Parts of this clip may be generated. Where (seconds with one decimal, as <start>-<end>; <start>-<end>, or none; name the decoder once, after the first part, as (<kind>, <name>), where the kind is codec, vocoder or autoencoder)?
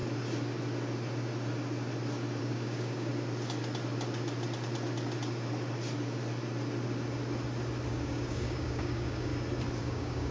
2.4-3.1 (codec, DAC); 7.9-9.3; 9.8-10.3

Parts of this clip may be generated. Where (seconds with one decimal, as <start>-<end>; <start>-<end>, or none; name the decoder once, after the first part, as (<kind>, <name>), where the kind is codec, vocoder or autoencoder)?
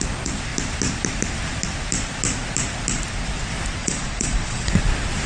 3.8-4.7 (vocoder, Vocos)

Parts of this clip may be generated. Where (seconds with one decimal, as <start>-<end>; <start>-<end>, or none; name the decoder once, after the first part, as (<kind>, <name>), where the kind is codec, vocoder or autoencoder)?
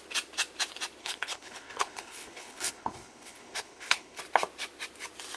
1.0-4.2 (codec, HILCodec)